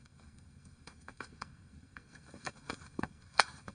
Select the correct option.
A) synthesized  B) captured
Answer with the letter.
A